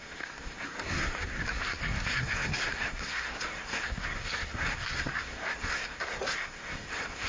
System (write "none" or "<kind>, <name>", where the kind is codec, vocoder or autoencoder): codec, SNAC